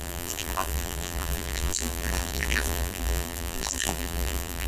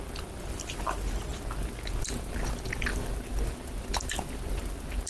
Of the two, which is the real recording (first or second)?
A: second